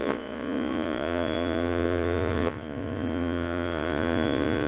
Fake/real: fake